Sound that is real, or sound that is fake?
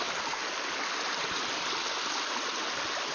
real